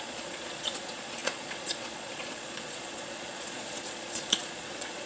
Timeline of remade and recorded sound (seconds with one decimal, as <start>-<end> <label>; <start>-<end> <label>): 0.0-5.1 remade